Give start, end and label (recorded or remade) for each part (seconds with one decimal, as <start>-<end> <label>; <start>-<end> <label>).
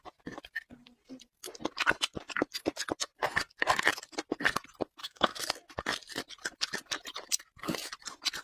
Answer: 0.0-5.0 recorded; 5.0-5.5 remade; 5.5-8.4 recorded